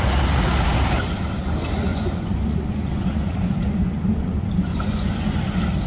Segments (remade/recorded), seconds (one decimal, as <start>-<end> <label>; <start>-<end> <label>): 0.0-1.9 recorded; 1.9-5.4 remade; 5.4-5.9 recorded